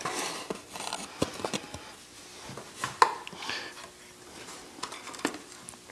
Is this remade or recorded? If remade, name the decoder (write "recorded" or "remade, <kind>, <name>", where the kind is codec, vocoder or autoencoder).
recorded